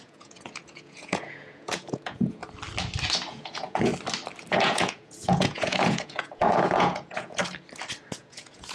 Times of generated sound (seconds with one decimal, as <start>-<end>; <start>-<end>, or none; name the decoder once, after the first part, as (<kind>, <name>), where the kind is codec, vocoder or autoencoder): 0.0-2.4 (vocoder, Vocos); 3.3-3.9; 4.5-7.4; 8.2-8.7